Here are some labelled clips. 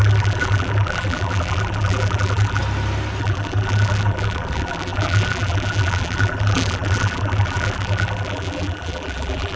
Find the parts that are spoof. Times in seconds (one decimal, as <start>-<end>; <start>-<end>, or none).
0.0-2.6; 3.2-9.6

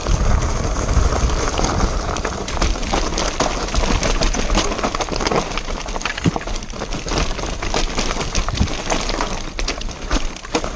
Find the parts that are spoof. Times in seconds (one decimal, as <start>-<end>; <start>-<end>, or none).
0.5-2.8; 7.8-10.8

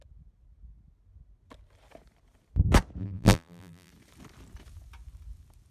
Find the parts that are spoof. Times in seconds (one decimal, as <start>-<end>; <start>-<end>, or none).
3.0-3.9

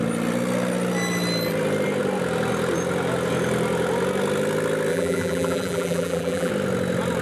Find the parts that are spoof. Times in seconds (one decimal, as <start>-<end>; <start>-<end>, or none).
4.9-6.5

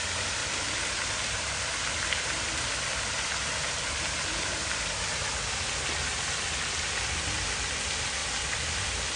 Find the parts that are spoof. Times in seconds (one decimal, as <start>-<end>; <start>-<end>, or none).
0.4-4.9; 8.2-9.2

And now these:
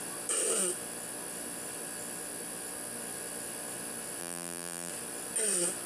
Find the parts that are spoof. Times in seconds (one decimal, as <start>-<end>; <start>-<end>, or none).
4.2-4.9

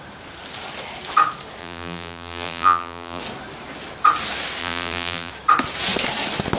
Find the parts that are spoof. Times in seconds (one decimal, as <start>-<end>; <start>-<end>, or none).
1.6-3.2; 4.6-5.3

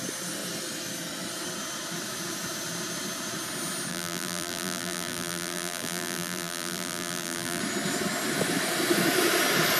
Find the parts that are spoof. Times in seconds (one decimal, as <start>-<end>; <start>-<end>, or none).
3.9-7.6